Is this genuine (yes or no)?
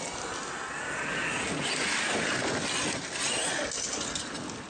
yes